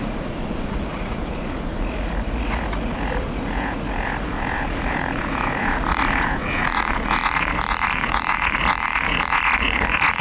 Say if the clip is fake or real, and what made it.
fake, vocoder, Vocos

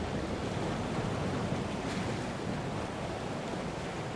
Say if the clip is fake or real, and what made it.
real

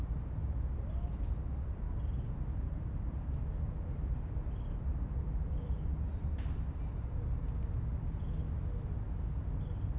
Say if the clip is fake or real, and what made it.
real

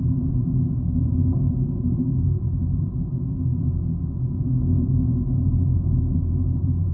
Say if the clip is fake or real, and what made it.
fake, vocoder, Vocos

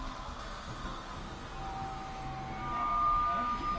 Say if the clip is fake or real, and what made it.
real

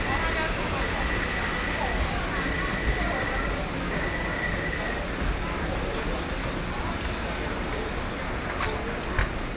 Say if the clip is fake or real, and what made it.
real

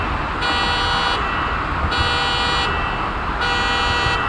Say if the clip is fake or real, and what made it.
real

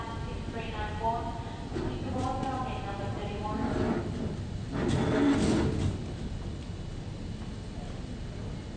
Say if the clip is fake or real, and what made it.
real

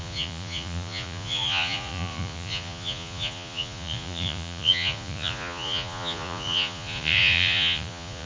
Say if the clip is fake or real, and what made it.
fake, vocoder, Vocos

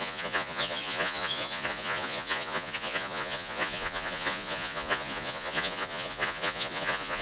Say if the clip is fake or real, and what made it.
fake, vocoder, Vocos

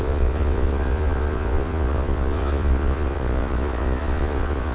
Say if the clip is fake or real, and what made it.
fake, vocoder, Vocos